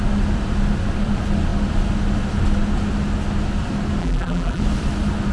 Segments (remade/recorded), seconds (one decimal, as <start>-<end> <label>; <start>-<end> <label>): 0.0-4.0 recorded; 4.0-4.6 remade; 4.6-5.3 recorded